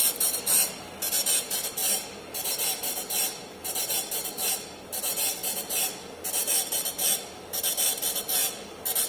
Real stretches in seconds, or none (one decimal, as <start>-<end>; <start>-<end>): 0.0-9.1